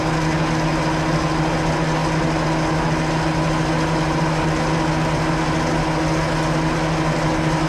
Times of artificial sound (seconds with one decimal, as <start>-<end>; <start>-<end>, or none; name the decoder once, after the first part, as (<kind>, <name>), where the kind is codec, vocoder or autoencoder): none